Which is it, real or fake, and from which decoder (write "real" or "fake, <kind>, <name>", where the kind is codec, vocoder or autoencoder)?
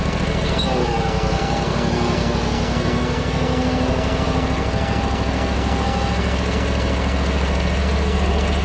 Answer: fake, codec, SNAC